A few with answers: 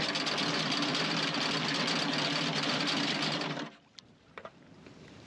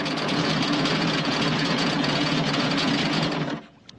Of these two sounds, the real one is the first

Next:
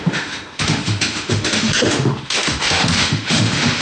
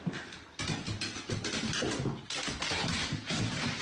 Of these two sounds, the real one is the second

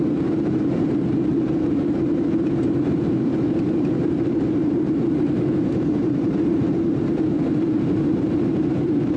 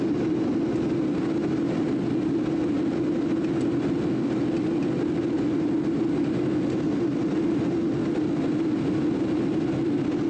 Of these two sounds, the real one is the second